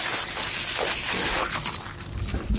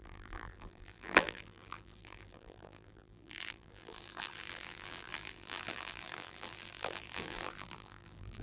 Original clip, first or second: first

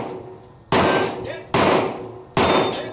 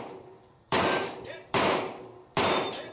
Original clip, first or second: first